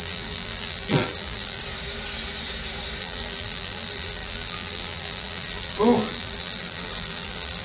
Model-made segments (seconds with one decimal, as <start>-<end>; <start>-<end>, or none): 0.0-1.6; 3.0-7.6